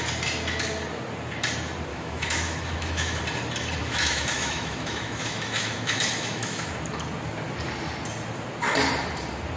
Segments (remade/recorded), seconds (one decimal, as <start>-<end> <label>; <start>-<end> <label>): 0.0-1.9 recorded; 1.9-3.2 remade; 3.2-3.8 recorded; 3.8-6.7 remade; 6.7-9.6 recorded